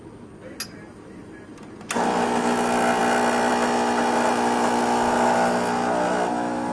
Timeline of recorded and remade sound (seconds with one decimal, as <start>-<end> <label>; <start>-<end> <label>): 0.0-6.7 recorded